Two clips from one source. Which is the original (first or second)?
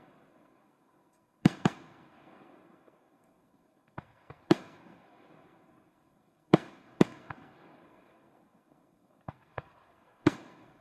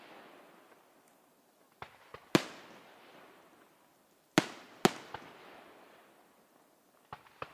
second